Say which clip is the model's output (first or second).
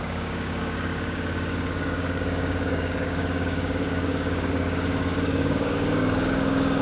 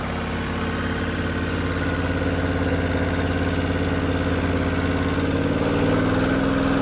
first